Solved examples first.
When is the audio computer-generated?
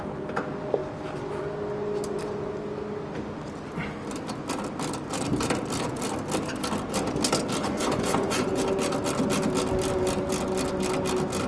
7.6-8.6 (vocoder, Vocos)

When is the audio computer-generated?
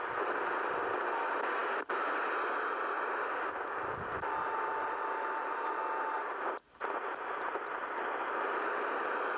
none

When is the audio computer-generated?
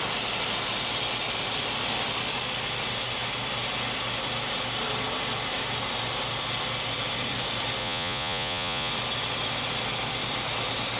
7.8-8.9 (vocoder, Vocos)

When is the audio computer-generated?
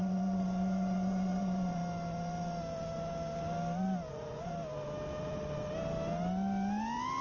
0.0-1.8 (vocoder, Vocos); 4.1-4.5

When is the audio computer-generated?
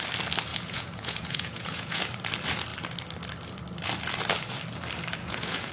0.5-2.0 (vocoder, Vocos); 5.2-5.7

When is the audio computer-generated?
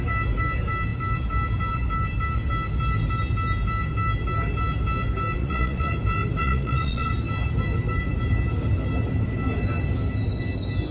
5.4-5.9 (vocoder, Vocos); 6.4-7.1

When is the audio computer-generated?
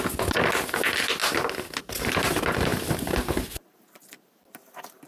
none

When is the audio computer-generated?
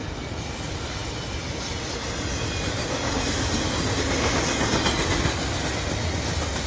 none